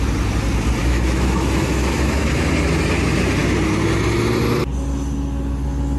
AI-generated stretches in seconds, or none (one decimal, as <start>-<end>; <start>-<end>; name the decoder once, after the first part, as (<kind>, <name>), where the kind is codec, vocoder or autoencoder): 0.8-2.4 (autoencoder, DAC-VAE)